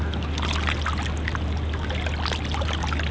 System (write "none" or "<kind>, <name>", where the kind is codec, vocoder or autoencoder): none